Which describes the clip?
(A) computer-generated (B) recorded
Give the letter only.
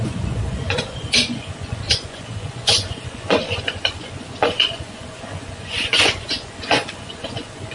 A